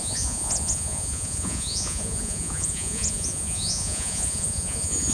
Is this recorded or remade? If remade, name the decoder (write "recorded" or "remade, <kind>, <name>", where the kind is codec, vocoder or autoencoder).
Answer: remade, vocoder, Vocos